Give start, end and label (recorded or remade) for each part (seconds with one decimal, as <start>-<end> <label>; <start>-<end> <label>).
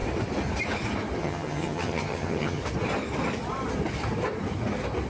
0.0-1.2 recorded; 1.2-2.6 remade; 2.6-5.1 recorded